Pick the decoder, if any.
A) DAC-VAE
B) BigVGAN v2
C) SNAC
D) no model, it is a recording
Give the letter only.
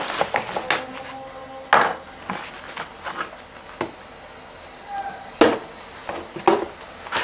D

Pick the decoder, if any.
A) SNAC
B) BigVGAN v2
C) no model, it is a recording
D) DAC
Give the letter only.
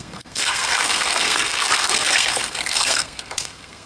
A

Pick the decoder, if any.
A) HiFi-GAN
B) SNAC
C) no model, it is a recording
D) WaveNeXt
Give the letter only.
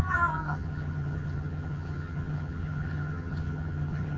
A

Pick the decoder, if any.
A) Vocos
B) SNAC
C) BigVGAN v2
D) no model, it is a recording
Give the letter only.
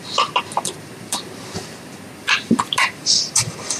D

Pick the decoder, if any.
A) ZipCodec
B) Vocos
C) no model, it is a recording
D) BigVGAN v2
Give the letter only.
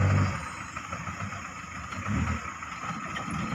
C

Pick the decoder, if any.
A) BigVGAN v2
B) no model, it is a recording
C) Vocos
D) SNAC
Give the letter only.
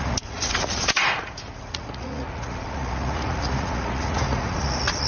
C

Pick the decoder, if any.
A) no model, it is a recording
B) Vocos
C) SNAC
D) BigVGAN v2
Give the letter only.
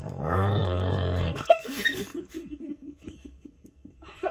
C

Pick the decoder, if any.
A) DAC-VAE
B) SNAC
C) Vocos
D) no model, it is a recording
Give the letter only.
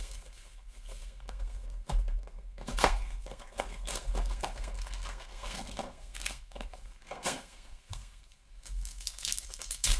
B